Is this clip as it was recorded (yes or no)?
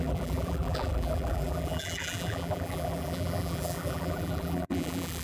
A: no